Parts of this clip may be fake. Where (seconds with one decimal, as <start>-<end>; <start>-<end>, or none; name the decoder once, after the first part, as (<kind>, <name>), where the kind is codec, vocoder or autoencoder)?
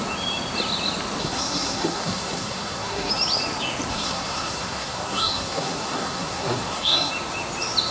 1.2-3.1 (codec, SNAC); 3.9-7.1